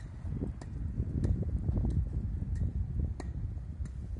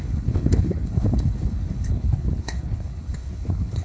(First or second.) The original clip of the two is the first